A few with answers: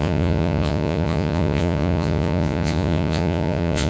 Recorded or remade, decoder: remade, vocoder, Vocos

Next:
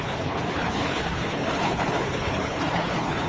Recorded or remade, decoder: remade, codec, HILCodec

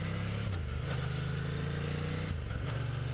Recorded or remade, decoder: recorded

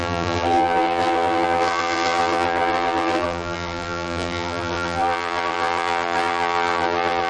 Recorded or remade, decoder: remade, vocoder, BigVGAN v2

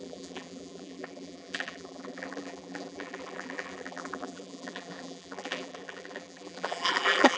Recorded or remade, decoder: remade, vocoder, BigVGAN v2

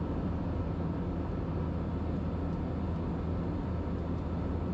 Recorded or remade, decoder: recorded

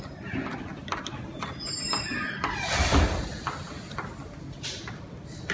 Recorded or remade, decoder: recorded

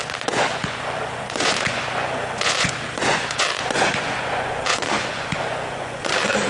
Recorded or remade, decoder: remade, vocoder, Vocos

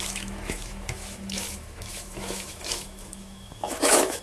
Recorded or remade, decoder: remade, autoencoder, DAC-VAE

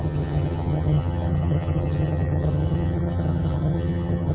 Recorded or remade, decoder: remade, vocoder, HiFi-GAN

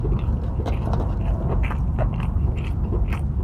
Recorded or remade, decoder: recorded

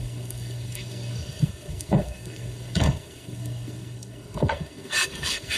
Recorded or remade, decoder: remade, codec, SNAC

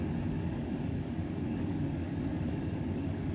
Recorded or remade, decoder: remade, codec, DAC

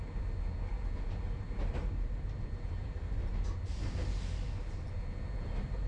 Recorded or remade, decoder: recorded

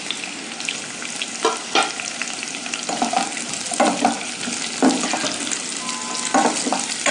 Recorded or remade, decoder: recorded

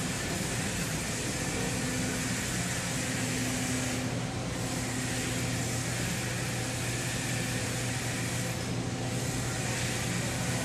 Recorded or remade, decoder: recorded